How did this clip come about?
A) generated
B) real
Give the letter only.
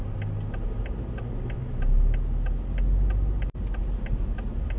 B